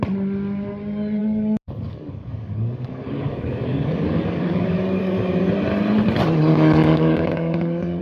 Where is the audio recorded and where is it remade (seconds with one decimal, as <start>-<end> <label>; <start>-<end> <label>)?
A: 0.0-1.2 recorded; 1.2-5.3 remade; 5.3-6.5 recorded; 6.5-8.0 remade